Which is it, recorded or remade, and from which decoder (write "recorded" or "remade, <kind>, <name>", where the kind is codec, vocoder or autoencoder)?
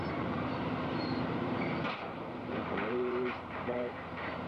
remade, vocoder, BigVGAN v2